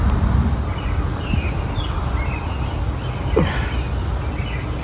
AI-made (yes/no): no